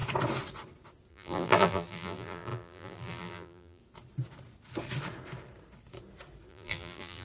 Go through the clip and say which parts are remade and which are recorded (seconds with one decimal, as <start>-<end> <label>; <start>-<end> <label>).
0.0-1.1 recorded; 1.1-3.8 remade; 3.8-6.5 recorded; 6.5-7.2 remade